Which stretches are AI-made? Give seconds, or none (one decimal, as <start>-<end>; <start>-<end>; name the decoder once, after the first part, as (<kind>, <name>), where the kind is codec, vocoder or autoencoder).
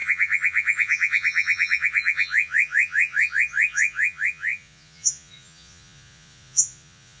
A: 0.0-7.2 (vocoder, Vocos)